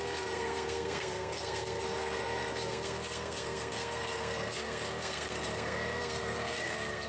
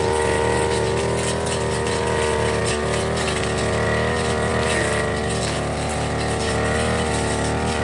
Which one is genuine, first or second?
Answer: second